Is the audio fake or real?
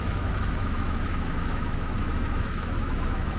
fake